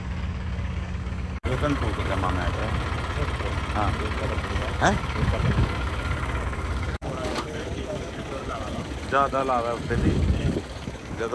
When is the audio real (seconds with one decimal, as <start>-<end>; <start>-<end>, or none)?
2.6-4.3; 9.4-9.9